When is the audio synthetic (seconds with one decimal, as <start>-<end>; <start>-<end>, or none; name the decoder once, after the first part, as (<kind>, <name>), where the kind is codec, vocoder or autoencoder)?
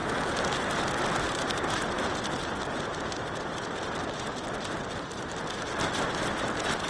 none